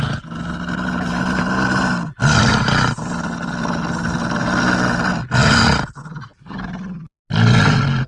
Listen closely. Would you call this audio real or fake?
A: real